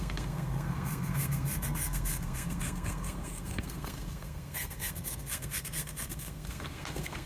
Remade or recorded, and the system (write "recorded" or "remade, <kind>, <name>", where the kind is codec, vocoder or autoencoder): remade, codec, SNAC